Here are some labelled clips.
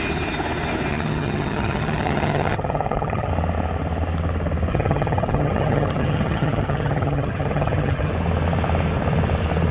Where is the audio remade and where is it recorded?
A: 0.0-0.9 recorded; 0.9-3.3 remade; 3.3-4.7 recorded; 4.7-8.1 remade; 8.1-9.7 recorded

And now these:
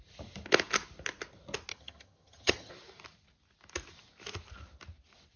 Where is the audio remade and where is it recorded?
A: 0.0-1.7 recorded; 1.7-2.7 remade; 2.7-5.4 recorded

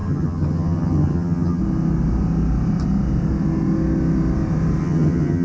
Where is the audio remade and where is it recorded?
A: 0.0-1.6 remade; 1.6-4.8 recorded; 4.8-5.4 remade

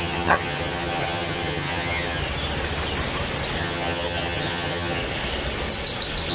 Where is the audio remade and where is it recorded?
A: 0.0-2.2 remade; 2.2-3.6 recorded; 3.6-5.0 remade; 5.0-6.3 recorded

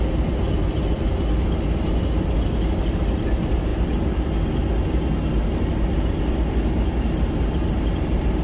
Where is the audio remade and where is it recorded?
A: 0.0-8.4 recorded

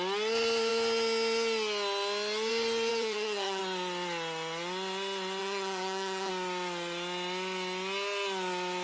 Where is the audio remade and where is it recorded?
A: 0.0-2.9 recorded; 2.9-3.6 remade; 3.6-5.4 recorded; 5.4-6.3 remade; 6.3-8.8 recorded

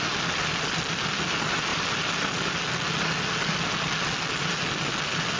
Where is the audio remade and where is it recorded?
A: 0.0-5.4 recorded